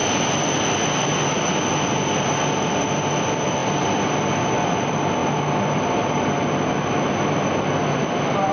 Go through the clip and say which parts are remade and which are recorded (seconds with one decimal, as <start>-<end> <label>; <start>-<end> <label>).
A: 0.0-8.5 recorded